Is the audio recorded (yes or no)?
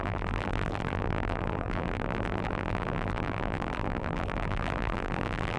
no